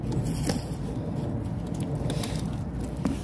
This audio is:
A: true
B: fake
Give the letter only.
A